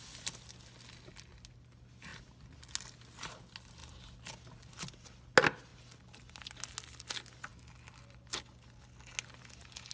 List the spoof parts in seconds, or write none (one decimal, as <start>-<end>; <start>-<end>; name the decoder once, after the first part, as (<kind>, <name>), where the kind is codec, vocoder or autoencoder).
none